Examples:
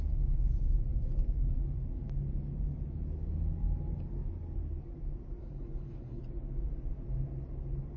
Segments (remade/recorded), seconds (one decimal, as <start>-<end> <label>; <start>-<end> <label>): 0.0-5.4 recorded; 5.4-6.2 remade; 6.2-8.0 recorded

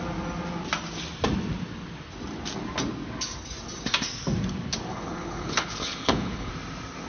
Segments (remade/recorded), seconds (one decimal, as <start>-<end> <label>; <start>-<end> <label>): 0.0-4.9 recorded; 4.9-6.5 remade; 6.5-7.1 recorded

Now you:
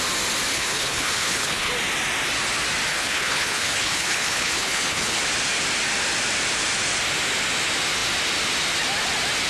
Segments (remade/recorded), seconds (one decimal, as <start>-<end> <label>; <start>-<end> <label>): 0.0-0.5 recorded; 0.5-1.7 remade; 1.7-2.9 recorded; 2.9-5.2 remade; 5.2-9.5 recorded